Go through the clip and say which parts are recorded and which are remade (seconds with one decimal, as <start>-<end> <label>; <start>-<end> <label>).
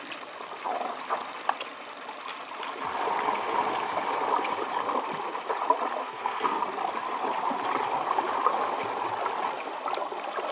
0.0-6.0 recorded; 6.0-6.6 remade; 6.6-10.5 recorded